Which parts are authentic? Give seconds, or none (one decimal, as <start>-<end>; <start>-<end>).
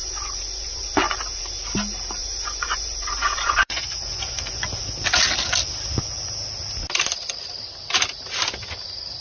1.4-2.2; 4.8-9.2